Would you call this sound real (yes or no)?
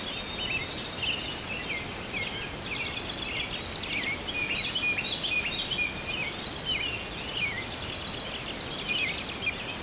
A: yes